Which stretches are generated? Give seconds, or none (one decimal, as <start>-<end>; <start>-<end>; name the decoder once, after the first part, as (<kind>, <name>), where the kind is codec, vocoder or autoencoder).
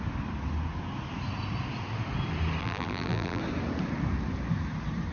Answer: 2.6-3.4 (vocoder, BigVGAN v2)